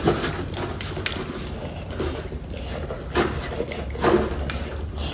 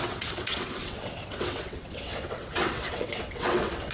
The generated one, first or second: second